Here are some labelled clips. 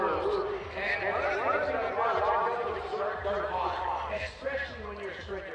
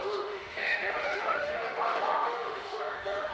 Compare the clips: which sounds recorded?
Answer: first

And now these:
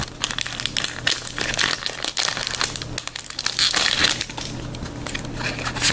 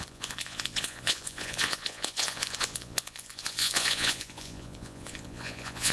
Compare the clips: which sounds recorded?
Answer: first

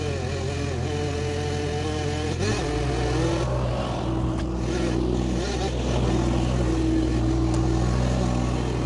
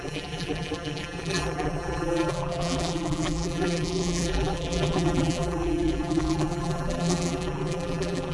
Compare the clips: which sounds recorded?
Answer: first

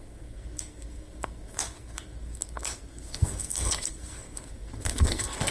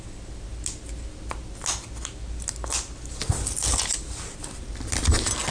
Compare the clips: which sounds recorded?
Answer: second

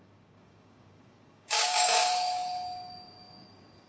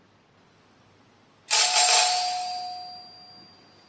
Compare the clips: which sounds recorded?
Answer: second